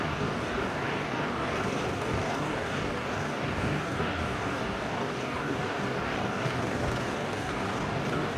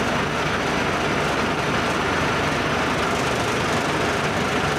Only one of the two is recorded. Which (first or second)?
second